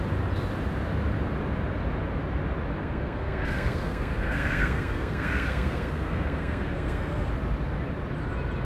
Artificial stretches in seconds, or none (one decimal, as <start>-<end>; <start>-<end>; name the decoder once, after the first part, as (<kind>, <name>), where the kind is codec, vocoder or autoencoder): 2.8-7.3 (codec, SNAC)